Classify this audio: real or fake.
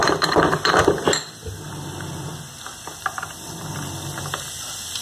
fake